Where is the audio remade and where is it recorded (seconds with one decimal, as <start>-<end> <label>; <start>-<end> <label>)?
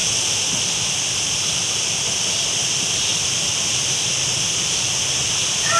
0.0-5.8 recorded